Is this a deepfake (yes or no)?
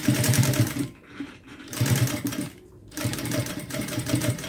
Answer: yes